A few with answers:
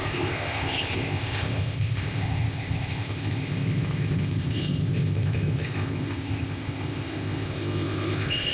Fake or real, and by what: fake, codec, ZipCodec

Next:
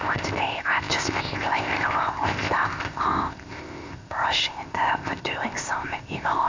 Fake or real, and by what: fake, codec, ZipCodec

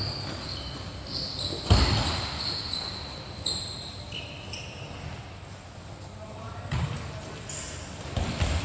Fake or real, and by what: real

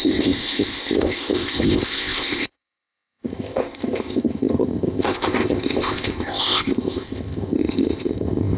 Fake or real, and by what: fake, codec, ZipCodec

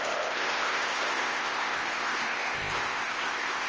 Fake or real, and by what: fake, codec, ZipCodec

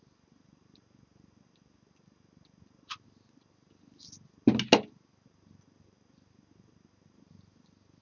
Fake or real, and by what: real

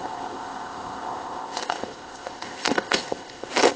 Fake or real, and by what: fake, codec, ZipCodec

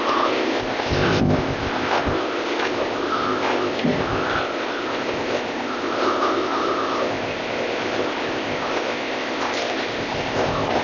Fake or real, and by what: fake, codec, ZipCodec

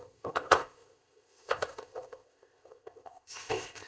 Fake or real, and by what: fake, codec, ZipCodec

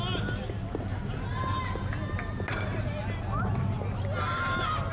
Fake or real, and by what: real